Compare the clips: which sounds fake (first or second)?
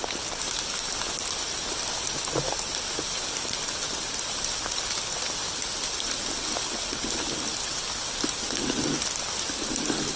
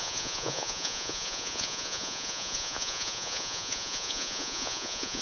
second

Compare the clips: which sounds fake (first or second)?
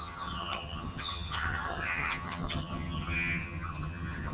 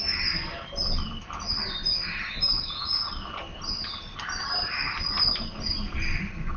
first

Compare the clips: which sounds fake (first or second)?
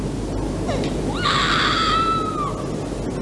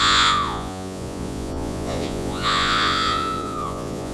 second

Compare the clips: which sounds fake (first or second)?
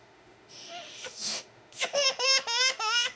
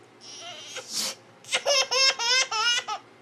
first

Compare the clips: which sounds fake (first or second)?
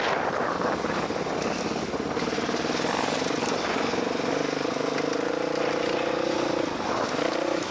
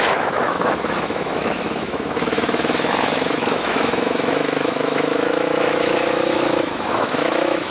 second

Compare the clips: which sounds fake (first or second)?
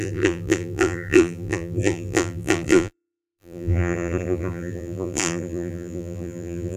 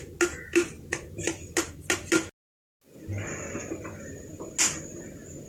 first